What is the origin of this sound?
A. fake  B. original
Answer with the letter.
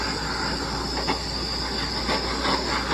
B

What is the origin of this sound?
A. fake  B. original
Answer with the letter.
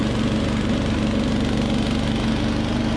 B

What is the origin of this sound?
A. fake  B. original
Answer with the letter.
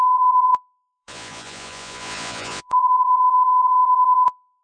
A